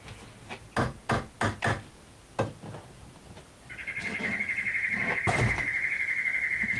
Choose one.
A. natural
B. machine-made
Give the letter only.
A